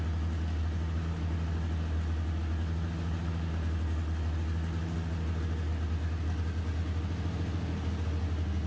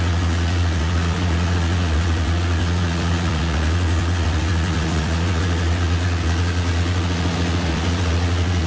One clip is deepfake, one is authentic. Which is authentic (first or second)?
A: first